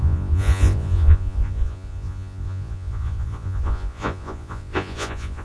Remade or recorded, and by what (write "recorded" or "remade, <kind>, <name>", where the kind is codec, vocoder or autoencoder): remade, vocoder, Vocos